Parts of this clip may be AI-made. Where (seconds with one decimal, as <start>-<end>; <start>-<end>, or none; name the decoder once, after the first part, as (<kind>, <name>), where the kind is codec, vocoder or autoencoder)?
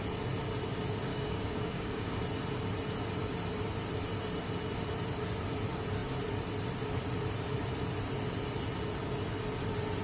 1.1-2.2 (codec, DAC)